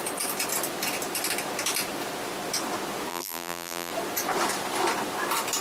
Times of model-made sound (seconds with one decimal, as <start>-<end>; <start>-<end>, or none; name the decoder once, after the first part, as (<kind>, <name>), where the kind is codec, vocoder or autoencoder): 3.1-3.9 (vocoder, BigVGAN v2)